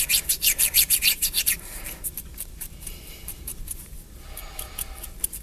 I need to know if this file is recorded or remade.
remade